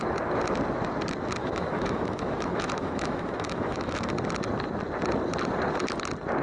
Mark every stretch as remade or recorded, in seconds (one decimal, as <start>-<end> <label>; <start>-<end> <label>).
0.0-1.4 recorded; 1.4-4.1 remade; 4.1-6.4 recorded